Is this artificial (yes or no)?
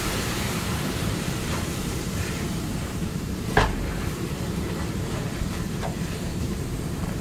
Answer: yes